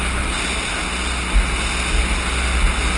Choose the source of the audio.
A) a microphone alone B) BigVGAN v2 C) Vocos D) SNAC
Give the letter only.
A